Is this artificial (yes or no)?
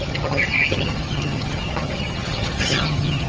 yes